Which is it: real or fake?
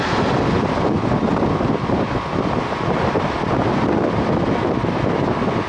real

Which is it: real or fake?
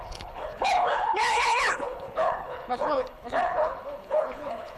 fake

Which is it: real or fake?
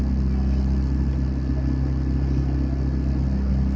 real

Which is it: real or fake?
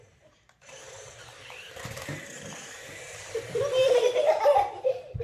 fake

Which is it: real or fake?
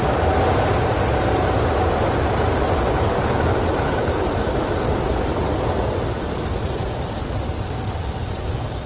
real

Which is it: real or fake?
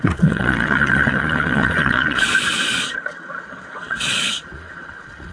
fake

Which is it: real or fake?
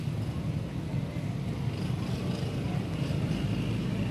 real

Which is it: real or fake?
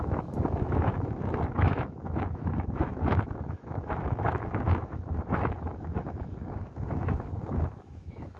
fake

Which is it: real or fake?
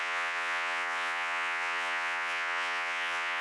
fake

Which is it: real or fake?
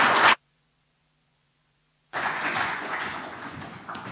fake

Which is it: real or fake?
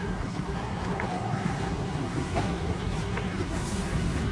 fake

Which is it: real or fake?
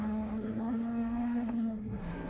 fake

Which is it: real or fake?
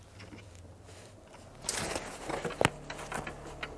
real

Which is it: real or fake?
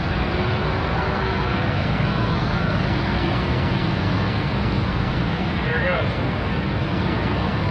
fake